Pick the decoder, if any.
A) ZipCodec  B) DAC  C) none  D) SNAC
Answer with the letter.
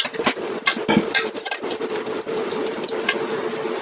C